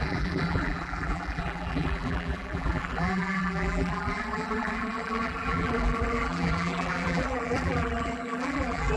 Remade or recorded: remade